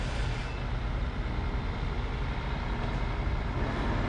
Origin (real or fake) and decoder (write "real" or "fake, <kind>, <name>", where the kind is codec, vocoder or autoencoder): real